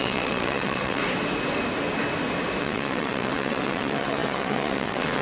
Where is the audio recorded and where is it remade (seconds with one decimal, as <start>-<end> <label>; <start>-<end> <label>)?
0.0-1.0 remade; 1.0-2.6 recorded; 2.6-5.2 remade